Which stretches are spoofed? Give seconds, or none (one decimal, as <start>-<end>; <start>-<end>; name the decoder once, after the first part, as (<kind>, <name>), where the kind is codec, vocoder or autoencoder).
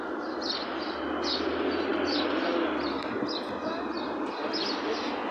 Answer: none